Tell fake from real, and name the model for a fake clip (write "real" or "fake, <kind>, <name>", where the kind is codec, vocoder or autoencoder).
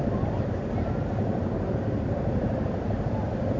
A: real